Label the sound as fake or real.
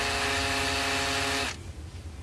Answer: real